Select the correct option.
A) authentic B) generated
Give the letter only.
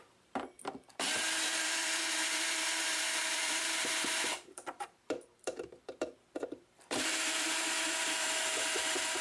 B